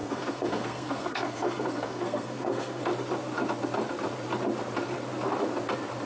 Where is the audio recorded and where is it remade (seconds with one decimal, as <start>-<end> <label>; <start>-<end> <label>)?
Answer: 0.0-2.8 remade; 2.8-6.1 recorded

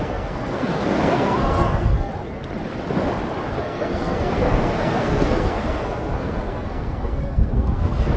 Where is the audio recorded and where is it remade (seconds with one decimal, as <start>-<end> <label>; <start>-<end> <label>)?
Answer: 0.0-2.1 remade; 2.1-3.5 recorded; 3.5-8.2 remade

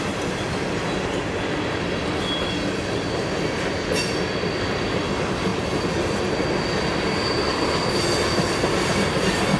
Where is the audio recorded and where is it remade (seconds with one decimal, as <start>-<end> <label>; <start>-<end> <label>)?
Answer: 0.0-9.6 recorded

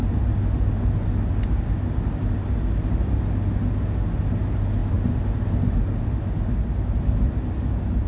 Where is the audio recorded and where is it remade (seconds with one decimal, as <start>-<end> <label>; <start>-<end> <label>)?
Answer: 0.0-8.1 recorded

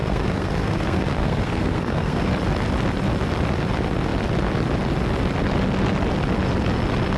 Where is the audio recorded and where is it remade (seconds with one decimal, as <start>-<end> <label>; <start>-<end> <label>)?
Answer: 0.0-2.3 remade; 2.3-7.2 recorded

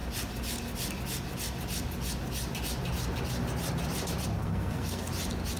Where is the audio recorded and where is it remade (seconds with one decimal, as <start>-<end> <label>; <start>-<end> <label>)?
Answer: 0.0-4.4 recorded; 4.4-5.1 remade; 5.1-5.6 recorded

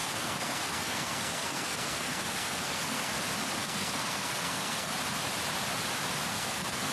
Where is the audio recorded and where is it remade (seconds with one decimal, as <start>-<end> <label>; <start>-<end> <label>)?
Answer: 0.0-3.2 remade; 3.2-3.6 recorded; 3.6-4.9 remade; 4.9-6.3 recorded; 6.3-6.9 remade